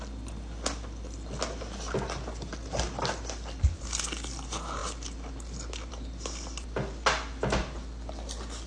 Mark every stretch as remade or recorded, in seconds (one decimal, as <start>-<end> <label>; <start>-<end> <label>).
0.0-8.7 recorded